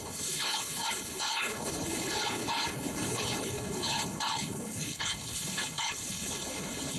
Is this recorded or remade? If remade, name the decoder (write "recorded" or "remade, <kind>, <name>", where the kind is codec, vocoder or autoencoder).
remade, codec, HILCodec